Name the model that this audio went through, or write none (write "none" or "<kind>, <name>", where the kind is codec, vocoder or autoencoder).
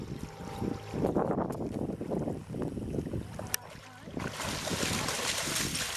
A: none